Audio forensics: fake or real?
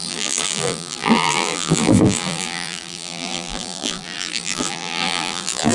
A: fake